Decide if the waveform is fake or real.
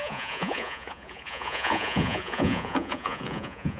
fake